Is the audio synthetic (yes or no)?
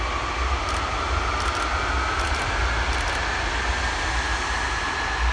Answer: no